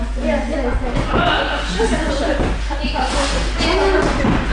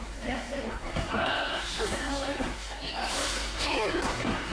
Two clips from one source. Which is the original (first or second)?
first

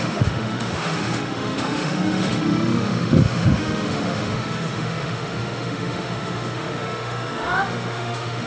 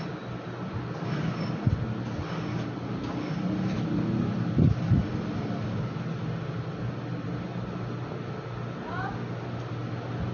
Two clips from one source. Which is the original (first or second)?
second